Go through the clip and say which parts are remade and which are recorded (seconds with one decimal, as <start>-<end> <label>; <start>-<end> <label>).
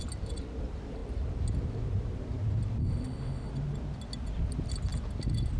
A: 0.0-2.8 recorded; 2.8-3.5 remade; 3.5-5.6 recorded